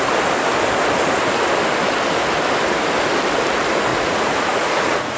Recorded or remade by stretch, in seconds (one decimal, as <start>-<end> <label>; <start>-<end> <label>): 0.0-3.9 recorded; 3.9-5.2 remade